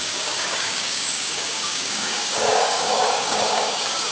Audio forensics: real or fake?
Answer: fake